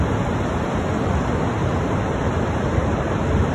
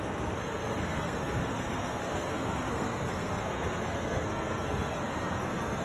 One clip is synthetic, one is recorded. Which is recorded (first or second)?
first